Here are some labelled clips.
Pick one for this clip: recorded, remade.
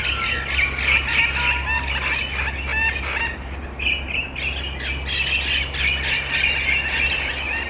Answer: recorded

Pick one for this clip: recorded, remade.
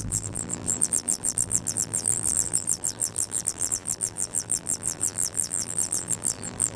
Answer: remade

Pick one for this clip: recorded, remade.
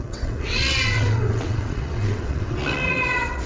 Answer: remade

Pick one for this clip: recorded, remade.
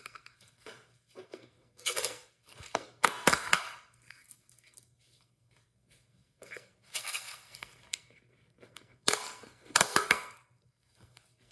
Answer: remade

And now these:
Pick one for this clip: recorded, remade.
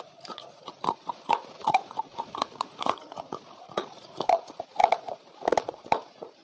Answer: remade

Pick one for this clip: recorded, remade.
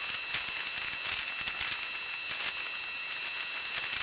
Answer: recorded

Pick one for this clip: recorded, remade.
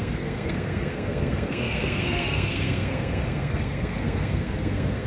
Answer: remade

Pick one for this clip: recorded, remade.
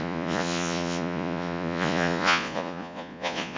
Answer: remade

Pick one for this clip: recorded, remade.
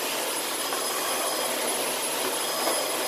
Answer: recorded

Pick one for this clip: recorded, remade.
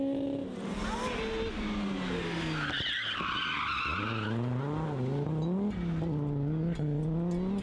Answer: recorded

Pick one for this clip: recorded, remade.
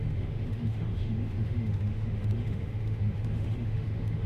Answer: remade